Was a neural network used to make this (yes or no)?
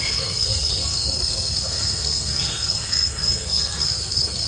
yes